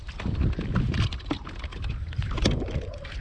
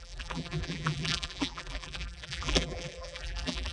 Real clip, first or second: first